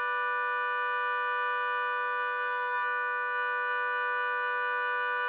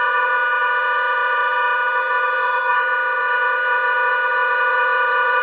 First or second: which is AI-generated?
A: second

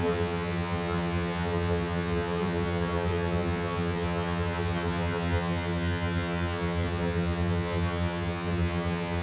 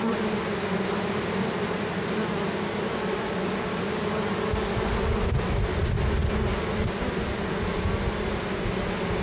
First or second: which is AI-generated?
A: first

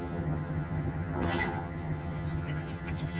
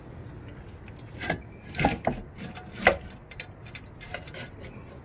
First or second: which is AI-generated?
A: first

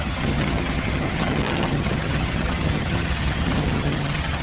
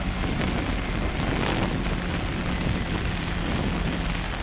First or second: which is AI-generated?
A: first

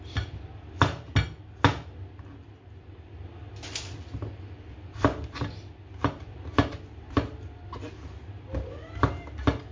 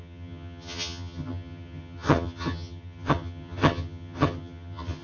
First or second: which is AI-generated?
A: second